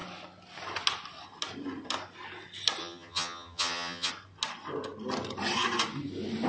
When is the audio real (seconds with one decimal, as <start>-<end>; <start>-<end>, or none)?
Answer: 0.0-2.8; 4.1-6.5